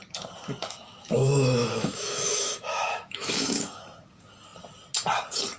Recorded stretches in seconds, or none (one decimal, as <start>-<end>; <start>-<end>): 0.0-0.6; 3.8-5.6